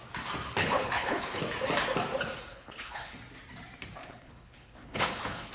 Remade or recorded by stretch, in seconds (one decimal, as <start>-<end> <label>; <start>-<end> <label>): 0.0-0.6 recorded; 0.6-1.4 remade; 1.4-2.5 recorded; 2.5-3.1 remade; 3.1-4.0 recorded; 4.0-5.5 remade